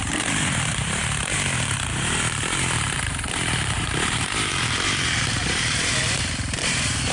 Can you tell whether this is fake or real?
fake